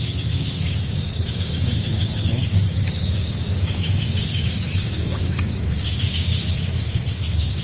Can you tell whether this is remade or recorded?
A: remade